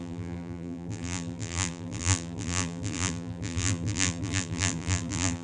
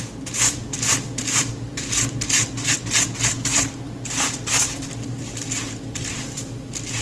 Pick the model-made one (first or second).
first